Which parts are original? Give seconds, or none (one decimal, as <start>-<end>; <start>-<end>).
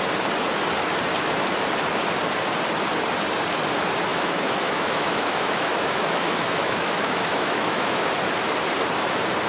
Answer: 0.0-4.1; 8.1-9.5